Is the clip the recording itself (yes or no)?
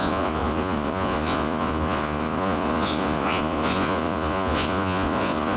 no